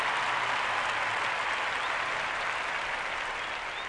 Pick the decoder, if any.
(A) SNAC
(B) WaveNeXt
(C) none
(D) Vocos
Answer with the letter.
C